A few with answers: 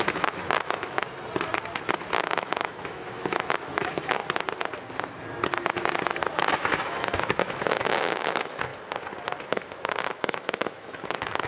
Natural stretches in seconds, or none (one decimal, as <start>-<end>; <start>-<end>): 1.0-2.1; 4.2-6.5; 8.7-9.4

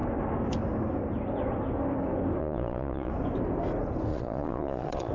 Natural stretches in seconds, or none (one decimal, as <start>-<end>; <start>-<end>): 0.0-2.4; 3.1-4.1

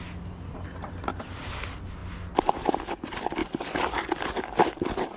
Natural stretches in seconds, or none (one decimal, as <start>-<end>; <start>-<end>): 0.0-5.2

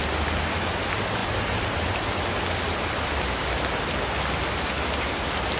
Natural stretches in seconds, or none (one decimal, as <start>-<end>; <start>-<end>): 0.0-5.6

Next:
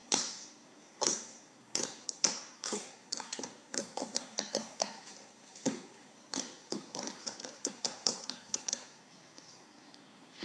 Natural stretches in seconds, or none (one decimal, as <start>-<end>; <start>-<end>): none